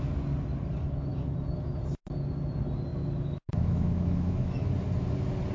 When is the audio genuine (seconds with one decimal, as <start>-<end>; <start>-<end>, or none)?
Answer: 0.0-2.9; 4.7-5.5